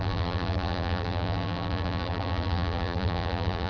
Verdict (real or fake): fake